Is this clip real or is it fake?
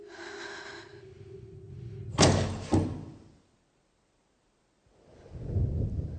real